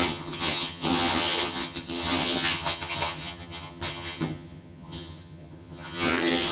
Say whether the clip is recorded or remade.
remade